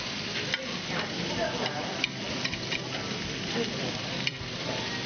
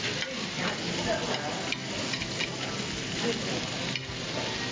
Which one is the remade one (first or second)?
first